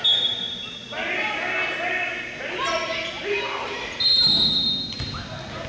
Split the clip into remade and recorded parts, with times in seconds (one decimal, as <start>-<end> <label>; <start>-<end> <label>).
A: 0.0-5.7 recorded